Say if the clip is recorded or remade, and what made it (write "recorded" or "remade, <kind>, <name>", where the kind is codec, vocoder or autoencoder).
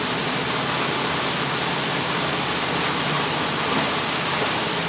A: recorded